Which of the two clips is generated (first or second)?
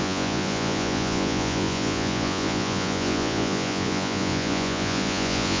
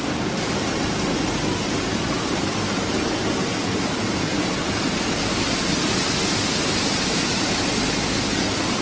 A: first